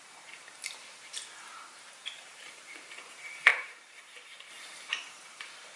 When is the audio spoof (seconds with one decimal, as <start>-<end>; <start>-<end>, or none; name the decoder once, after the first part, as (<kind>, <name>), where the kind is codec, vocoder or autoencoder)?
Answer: 0.0-5.8 (vocoder, BigVGAN v2)